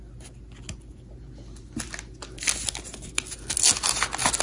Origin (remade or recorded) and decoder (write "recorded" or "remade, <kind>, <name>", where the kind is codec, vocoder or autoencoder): recorded